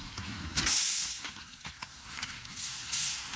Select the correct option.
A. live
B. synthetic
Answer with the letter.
B